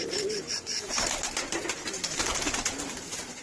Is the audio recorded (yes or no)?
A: yes